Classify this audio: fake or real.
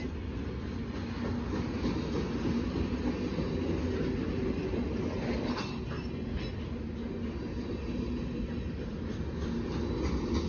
real